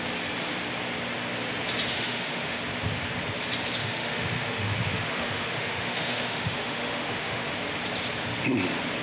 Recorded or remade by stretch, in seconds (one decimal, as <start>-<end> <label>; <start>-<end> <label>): 0.0-1.9 recorded; 1.9-2.6 remade; 2.6-3.8 recorded; 3.8-7.5 remade; 7.5-9.0 recorded